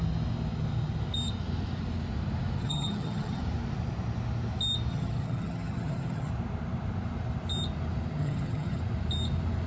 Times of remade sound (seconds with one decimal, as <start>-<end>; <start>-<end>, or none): 2.6-3.4; 4.9-6.3; 8.2-8.8